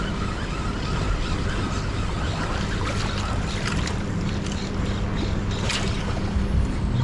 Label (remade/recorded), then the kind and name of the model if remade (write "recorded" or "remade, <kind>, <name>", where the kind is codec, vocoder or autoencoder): recorded